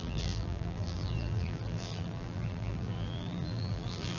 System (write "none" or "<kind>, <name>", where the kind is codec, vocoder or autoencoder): vocoder, BigVGAN v2